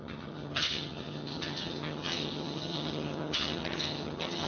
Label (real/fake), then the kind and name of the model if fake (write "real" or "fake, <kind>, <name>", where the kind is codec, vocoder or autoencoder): fake, vocoder, HiFi-GAN